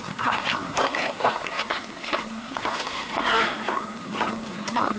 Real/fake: fake